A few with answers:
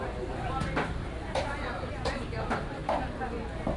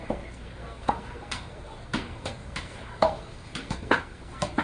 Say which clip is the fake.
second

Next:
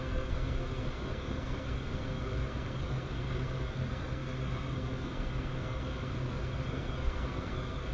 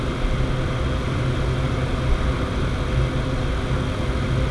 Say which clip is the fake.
first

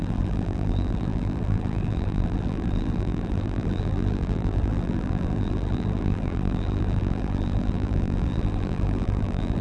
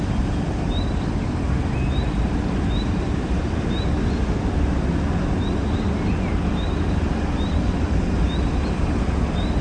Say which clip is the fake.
first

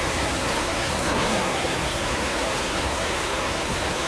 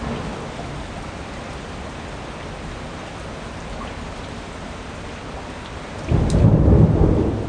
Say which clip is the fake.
first